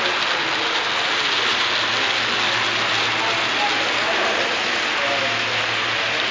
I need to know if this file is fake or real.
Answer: real